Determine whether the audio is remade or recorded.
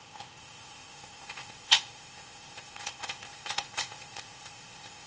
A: remade